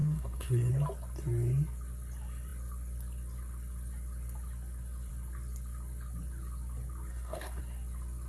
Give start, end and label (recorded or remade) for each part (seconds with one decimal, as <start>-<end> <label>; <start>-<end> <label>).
0.0-0.7 remade; 0.7-7.1 recorded; 7.1-7.6 remade; 7.6-8.3 recorded